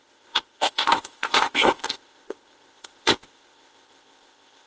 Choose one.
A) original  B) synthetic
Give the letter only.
B